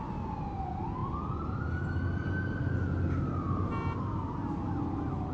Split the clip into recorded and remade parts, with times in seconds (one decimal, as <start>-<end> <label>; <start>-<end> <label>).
0.0-5.3 recorded